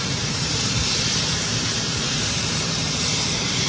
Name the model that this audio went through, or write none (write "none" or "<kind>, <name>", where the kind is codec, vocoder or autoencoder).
vocoder, BigVGAN v2